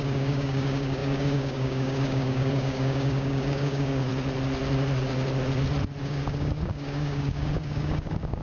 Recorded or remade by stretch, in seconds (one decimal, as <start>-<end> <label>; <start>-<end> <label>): 0.0-4.1 remade; 4.1-6.0 recorded; 6.0-8.4 remade